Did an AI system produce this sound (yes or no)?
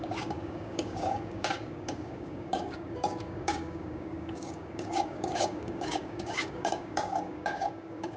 yes